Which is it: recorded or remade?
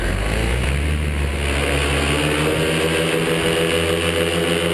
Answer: recorded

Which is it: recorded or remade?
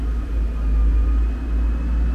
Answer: recorded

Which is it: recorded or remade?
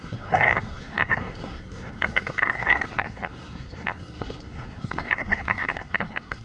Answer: remade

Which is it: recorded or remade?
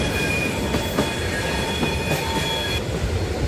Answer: recorded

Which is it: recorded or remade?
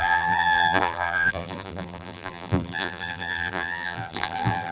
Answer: remade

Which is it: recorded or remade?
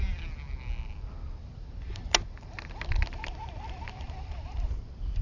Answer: recorded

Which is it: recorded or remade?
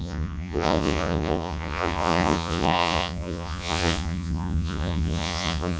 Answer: remade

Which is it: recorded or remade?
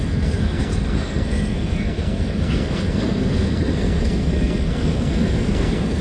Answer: remade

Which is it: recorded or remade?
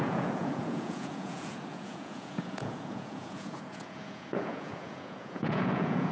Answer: remade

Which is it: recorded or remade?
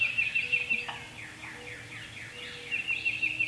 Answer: recorded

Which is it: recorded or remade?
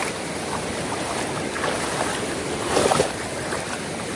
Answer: recorded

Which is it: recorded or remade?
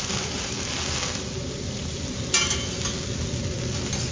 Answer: recorded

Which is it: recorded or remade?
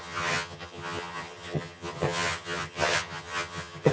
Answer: remade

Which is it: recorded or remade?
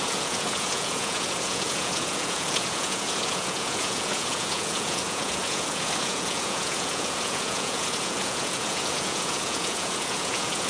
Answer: remade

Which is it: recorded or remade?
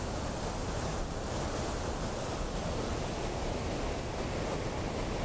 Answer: remade